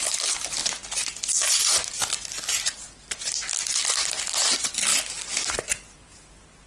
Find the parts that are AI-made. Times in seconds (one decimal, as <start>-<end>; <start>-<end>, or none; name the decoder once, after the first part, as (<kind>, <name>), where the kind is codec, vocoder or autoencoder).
none